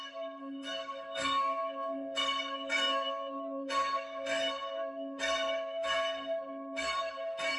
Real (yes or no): no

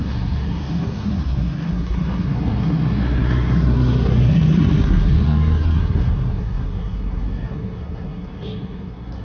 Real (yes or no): no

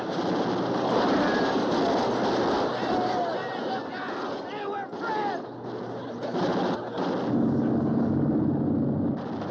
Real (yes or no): yes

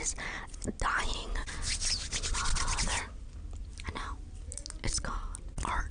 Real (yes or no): yes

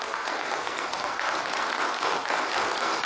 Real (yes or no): no